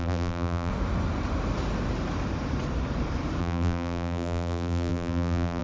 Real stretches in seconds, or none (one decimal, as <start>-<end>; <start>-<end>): 0.7-3.4